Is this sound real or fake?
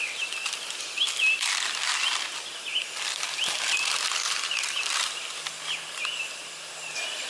real